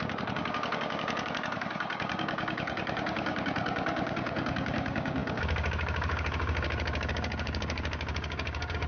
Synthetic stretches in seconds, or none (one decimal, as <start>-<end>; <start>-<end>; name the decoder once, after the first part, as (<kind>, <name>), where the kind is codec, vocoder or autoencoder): 0.0-8.9 (codec, DAC)